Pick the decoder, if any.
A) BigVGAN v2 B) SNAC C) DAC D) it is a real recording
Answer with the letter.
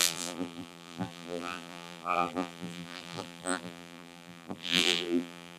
A